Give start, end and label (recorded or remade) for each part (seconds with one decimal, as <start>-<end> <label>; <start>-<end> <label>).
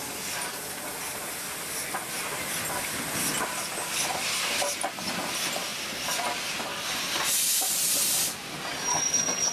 0.0-8.9 recorded; 8.9-9.5 remade